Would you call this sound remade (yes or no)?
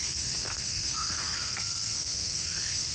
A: yes